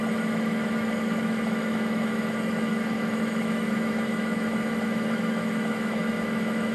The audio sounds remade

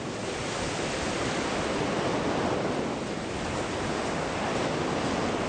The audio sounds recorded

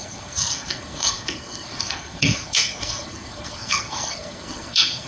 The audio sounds remade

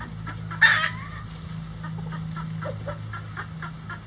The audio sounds recorded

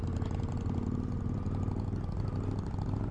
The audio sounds recorded